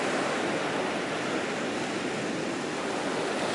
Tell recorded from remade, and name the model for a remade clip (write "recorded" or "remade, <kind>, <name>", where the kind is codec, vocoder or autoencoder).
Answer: recorded